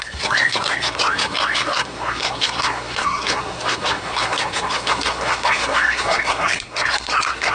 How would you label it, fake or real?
fake